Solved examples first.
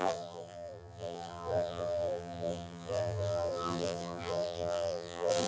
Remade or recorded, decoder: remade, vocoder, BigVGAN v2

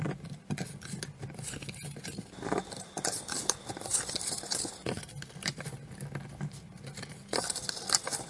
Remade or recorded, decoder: recorded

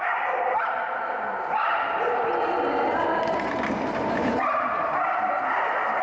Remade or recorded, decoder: remade, vocoder, BigVGAN v2